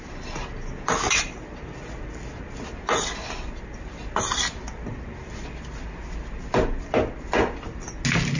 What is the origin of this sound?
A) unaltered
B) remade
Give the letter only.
A